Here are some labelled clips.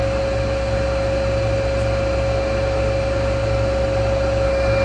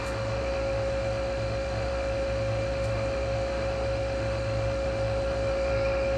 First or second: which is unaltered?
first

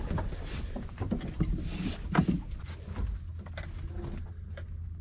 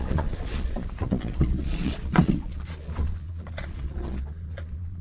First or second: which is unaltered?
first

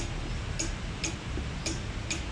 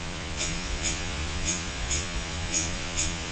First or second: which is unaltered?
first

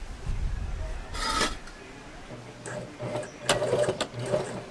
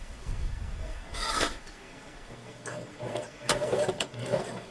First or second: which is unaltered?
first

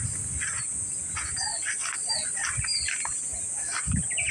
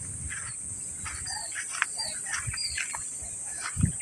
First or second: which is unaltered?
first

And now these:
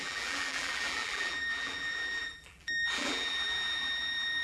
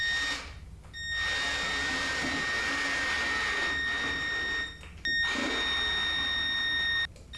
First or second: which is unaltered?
second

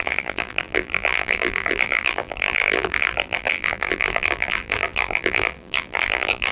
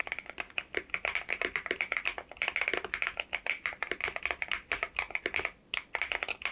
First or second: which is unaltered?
second